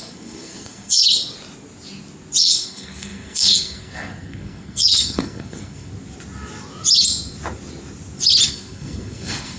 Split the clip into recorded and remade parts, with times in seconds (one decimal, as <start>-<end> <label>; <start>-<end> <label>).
0.0-1.0 remade; 1.0-2.4 recorded; 2.4-5.9 remade; 5.9-8.5 recorded; 8.5-9.6 remade